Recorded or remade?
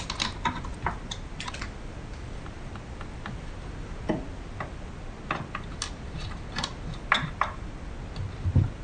recorded